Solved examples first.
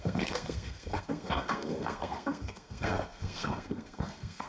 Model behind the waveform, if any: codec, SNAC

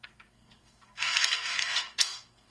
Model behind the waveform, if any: codec, SNAC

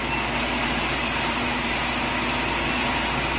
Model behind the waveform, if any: none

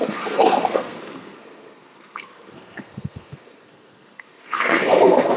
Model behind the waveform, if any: codec, SNAC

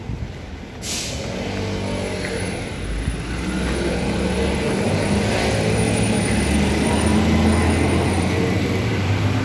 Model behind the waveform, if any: none